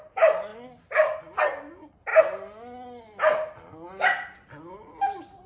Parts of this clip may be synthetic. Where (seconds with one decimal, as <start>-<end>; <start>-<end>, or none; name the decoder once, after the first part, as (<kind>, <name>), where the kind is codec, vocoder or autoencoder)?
none